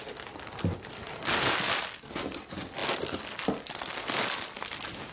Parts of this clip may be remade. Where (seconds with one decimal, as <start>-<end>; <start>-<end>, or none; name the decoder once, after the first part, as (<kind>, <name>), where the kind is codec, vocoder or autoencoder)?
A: none